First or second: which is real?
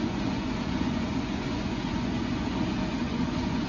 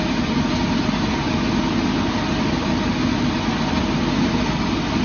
second